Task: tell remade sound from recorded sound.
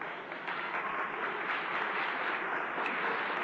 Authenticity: recorded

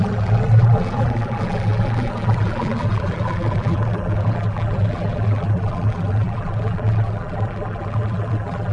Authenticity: remade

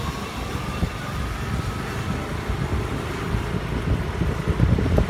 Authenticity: recorded